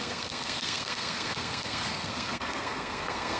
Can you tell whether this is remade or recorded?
remade